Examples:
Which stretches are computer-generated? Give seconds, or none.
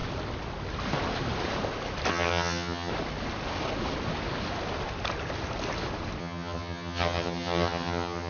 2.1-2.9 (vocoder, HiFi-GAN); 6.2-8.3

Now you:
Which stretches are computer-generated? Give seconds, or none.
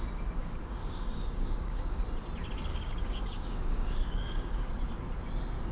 0.4-2.0 (codec, DAC); 2.7-4.7